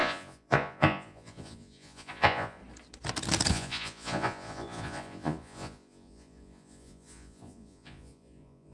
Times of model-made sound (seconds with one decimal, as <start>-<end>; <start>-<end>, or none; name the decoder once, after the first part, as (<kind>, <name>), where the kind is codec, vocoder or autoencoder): 0.0-2.6 (vocoder, Vocos); 3.5-8.7